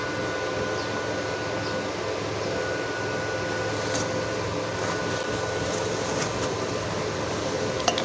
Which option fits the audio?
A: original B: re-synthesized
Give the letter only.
A